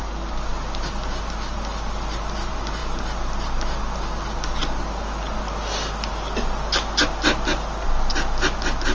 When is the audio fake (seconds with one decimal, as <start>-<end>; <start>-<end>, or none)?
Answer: none